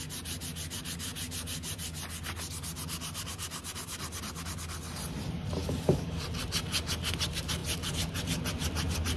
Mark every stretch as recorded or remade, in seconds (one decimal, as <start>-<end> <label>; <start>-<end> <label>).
0.0-5.6 recorded; 5.6-6.2 remade; 6.2-9.2 recorded